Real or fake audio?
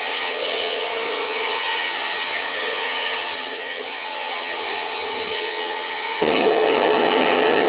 fake